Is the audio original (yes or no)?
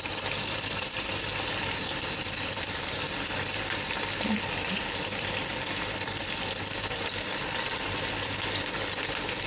no